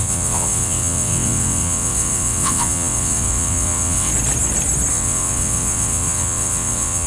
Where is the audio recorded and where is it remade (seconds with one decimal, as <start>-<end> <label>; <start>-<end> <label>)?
0.0-4.1 remade; 4.1-4.9 recorded; 4.9-7.1 remade